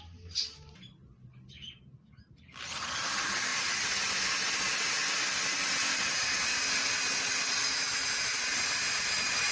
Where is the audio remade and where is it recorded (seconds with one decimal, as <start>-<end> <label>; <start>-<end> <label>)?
0.0-3.5 recorded; 3.5-4.1 remade; 4.1-9.5 recorded